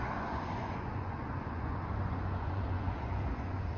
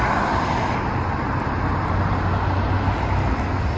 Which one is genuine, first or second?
second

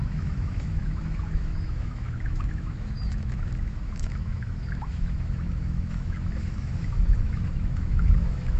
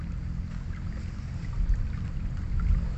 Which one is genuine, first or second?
second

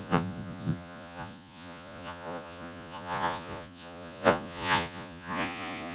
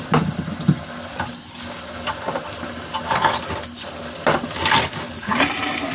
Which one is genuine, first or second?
second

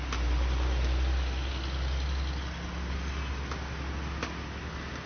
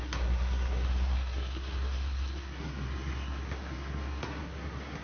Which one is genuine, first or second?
first